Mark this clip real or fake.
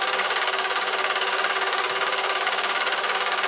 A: fake